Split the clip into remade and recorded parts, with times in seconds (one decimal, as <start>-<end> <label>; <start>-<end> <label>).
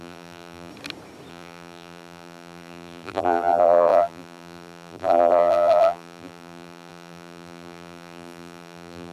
0.0-0.7 remade; 0.7-1.3 recorded; 1.3-9.1 remade